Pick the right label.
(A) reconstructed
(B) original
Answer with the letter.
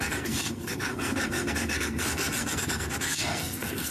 A